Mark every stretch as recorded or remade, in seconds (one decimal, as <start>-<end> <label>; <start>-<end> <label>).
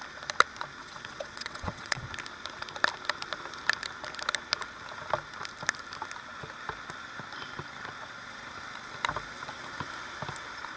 0.0-0.8 recorded; 0.8-2.0 remade; 2.0-10.8 recorded